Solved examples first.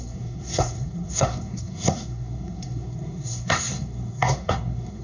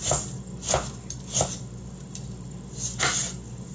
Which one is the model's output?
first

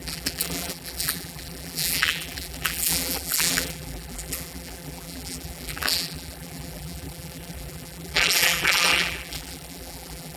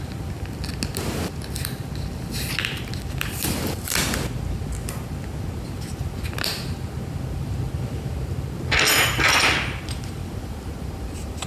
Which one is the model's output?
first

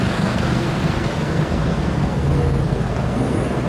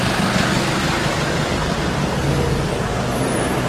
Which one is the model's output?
first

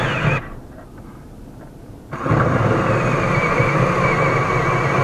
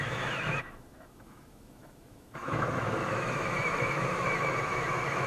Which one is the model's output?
second